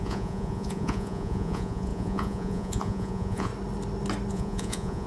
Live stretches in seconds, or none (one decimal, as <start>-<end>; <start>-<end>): 3.5-4.3